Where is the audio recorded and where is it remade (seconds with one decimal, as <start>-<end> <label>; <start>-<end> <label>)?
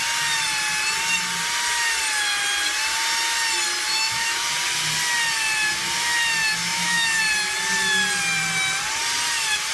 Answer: 0.0-3.9 recorded; 3.9-4.5 remade; 4.5-6.6 recorded; 6.6-7.2 remade; 7.2-9.7 recorded